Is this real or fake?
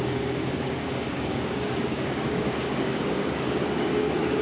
fake